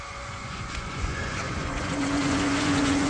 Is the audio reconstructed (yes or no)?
yes